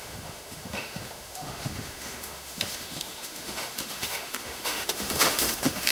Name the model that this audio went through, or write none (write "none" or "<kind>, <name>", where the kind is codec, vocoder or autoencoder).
autoencoder, DAC-VAE